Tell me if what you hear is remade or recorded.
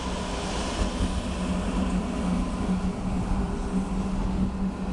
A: recorded